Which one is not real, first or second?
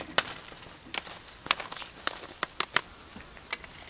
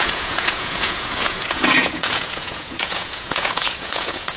second